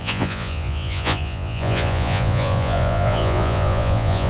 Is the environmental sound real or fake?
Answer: fake